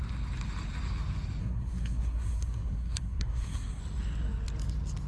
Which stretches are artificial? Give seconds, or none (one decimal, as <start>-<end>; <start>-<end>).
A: 1.4-3.8